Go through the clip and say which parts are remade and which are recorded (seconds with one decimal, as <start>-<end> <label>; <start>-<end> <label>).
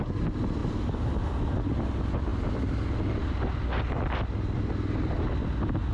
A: 0.0-5.9 recorded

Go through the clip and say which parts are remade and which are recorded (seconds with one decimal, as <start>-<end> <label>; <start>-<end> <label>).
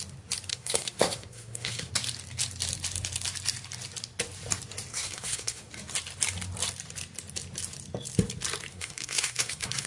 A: 0.0-0.5 recorded; 0.5-1.9 remade; 1.9-4.9 recorded; 4.9-5.7 remade; 5.7-8.7 recorded; 8.7-9.9 remade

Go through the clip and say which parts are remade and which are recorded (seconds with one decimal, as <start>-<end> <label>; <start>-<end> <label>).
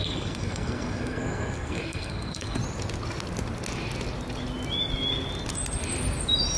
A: 0.0-2.6 remade; 2.6-6.6 recorded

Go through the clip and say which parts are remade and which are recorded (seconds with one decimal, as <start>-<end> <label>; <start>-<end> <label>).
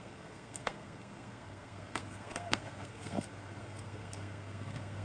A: 0.0-5.0 remade